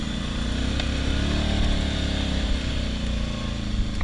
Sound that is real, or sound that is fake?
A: real